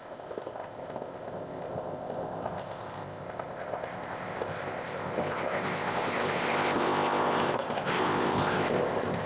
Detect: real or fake fake